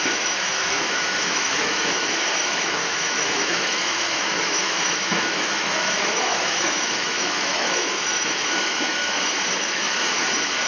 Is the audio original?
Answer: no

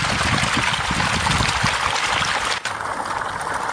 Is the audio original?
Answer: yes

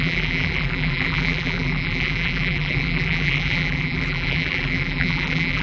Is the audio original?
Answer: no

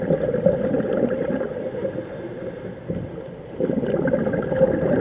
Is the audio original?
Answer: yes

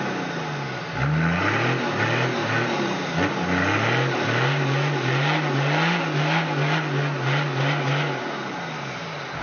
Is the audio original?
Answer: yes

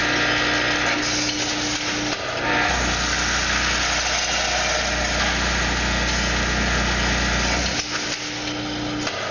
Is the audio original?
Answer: yes